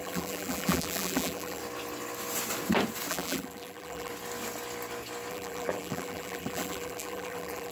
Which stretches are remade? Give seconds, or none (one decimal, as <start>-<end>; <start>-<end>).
0.0-1.6; 3.1-4.1; 5.3-7.7